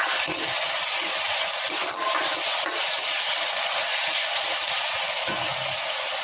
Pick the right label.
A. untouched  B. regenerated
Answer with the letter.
A